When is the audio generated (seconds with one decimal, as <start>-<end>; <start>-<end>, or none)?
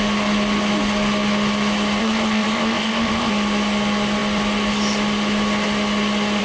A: 2.0-3.3